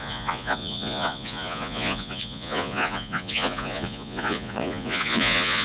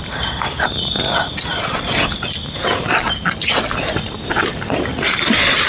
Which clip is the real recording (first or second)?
second